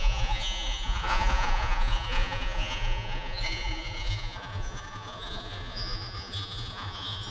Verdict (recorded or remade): remade